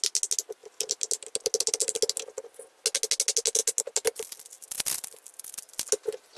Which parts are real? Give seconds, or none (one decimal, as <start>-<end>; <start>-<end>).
0.0-6.4